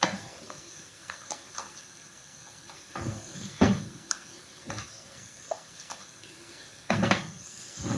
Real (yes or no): no